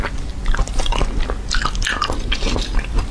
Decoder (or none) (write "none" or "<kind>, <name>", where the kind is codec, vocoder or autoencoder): none